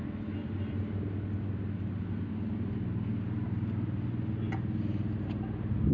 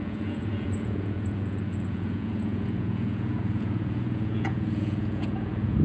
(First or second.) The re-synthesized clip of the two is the second